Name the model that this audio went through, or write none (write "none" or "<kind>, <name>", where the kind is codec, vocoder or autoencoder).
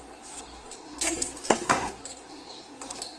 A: codec, SNAC